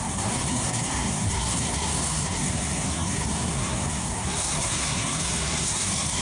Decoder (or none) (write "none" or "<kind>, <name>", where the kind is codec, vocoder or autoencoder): codec, SNAC